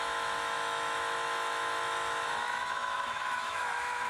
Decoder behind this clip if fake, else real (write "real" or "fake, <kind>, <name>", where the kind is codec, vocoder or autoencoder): fake, autoencoder, DAC-VAE